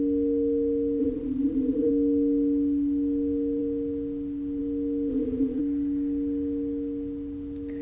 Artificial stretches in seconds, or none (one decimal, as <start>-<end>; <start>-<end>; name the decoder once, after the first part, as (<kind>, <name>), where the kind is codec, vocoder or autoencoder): 1.0-1.9 (vocoder, Vocos); 5.1-5.6